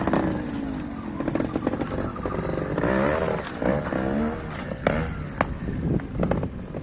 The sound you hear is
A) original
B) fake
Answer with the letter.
A